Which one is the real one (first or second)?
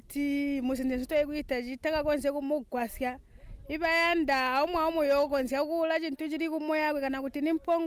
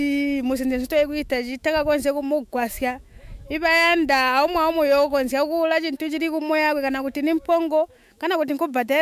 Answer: first